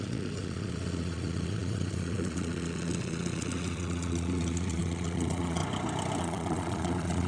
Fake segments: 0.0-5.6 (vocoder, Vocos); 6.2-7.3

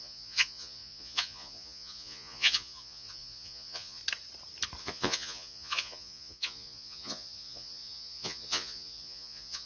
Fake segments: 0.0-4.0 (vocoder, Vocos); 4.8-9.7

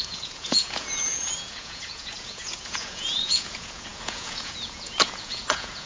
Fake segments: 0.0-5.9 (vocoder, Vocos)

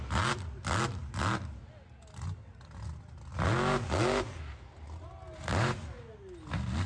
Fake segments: none